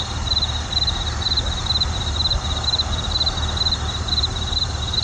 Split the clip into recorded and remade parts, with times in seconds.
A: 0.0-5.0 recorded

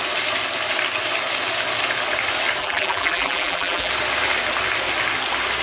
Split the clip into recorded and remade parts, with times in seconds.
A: 0.0-2.6 recorded; 2.6-3.9 remade; 3.9-5.6 recorded

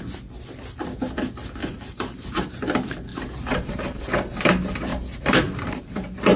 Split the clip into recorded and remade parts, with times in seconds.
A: 0.0-1.6 recorded; 1.6-2.5 remade; 2.5-3.1 recorded; 3.1-4.1 remade; 4.1-4.9 recorded; 4.9-5.8 remade; 5.8-6.4 recorded

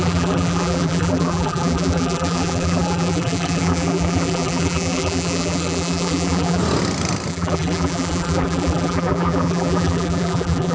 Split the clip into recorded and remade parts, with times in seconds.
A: 0.0-6.6 remade; 6.6-7.3 recorded; 7.3-10.7 remade

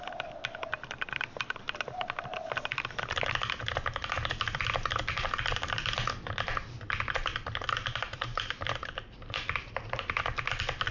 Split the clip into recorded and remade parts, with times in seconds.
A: 0.0-7.8 recorded; 7.8-10.4 remade; 10.4-10.9 recorded

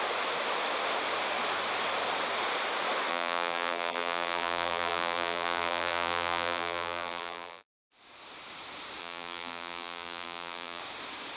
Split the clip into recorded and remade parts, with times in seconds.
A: 0.0-3.1 recorded; 3.1-7.7 remade; 7.7-9.0 recorded; 9.0-10.8 remade; 10.8-11.4 recorded

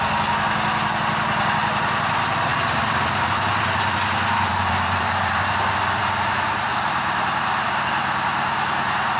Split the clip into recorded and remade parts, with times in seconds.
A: 0.0-2.5 recorded; 2.5-5.4 remade; 5.4-6.0 recorded; 6.0-7.9 remade; 7.9-9.2 recorded